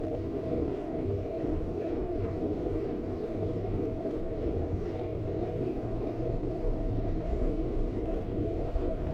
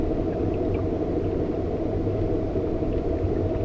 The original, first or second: second